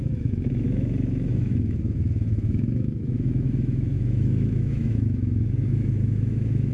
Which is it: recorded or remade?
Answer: remade